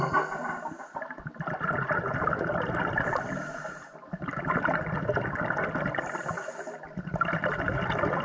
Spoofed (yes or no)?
no